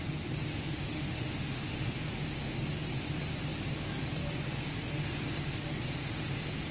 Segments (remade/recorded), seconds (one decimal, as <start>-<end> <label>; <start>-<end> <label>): 0.0-0.5 recorded; 0.5-2.0 remade; 2.0-6.7 recorded